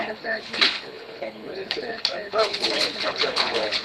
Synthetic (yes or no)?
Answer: yes